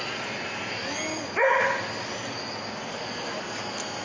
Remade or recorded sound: recorded